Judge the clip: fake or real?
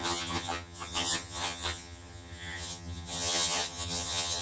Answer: fake